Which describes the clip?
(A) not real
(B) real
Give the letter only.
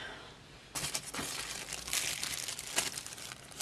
B